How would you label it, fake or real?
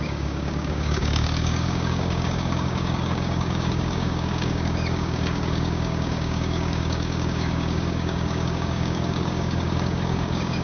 fake